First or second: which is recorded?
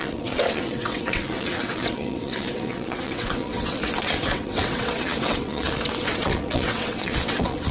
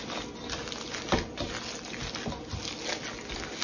second